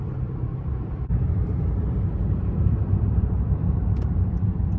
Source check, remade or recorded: remade